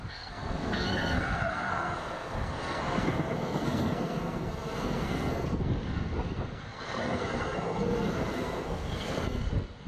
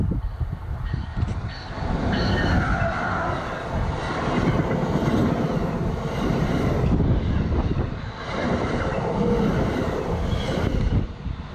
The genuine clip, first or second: second